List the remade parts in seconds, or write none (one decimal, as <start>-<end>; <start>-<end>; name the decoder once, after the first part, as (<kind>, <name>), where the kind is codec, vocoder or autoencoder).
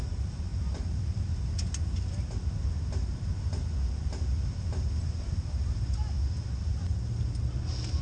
0.5-1.4 (vocoder, BigVGAN v2)